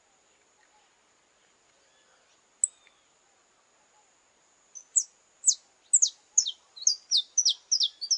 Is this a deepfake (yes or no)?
no